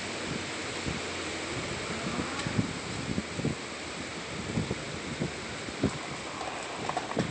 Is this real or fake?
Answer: real